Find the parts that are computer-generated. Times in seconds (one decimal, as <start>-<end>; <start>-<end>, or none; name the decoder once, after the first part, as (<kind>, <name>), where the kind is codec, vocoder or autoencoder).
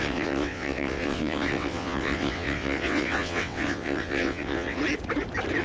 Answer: 0.0-4.8 (vocoder, WaveNeXt)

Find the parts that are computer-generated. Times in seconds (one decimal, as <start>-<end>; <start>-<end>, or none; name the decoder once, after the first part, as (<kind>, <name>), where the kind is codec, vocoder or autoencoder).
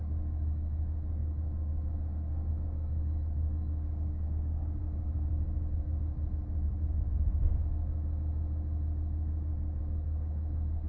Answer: 0.0-4.8 (codec, DAC); 9.8-10.9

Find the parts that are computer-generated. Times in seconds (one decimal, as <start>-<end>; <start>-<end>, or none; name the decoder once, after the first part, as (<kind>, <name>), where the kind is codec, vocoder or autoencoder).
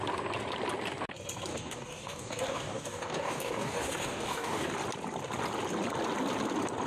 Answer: 1.5-4.7 (codec, DAC)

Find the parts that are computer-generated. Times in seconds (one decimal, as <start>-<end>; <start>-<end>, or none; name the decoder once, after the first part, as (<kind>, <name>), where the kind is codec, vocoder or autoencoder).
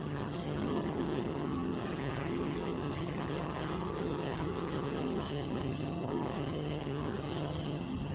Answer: 0.0-8.1 (vocoder, HiFi-GAN)